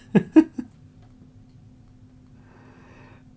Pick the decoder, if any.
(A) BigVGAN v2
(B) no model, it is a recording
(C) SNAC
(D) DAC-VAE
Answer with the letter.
B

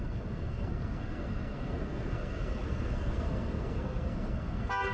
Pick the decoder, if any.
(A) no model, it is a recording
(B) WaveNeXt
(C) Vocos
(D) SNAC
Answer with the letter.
D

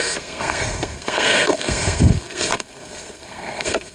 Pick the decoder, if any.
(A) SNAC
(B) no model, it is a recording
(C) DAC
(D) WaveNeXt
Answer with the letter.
A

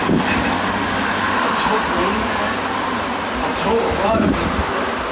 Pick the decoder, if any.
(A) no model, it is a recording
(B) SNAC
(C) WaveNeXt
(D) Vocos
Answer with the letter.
A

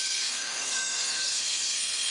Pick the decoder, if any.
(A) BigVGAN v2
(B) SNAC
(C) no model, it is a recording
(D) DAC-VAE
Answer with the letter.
B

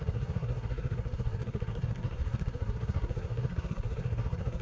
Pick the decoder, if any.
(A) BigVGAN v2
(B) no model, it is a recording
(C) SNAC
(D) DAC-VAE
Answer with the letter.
C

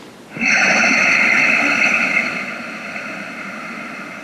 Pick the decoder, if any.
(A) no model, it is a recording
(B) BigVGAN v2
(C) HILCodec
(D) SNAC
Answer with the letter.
A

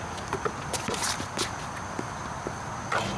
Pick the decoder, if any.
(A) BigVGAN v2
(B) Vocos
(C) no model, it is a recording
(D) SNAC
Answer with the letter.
C